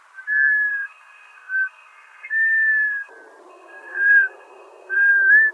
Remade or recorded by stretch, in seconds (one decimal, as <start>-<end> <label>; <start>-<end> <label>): 0.0-0.7 recorded; 0.7-3.1 remade; 3.1-3.5 recorded; 3.5-5.1 remade; 5.1-5.5 recorded